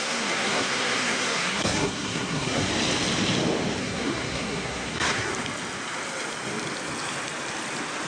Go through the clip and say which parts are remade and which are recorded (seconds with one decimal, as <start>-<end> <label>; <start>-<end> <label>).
0.0-2.7 remade; 2.7-3.8 recorded; 3.8-5.3 remade; 5.3-8.1 recorded